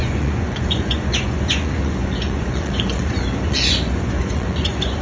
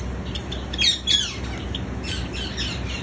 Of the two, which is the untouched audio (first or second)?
second